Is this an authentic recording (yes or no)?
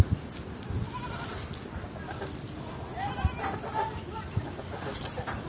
yes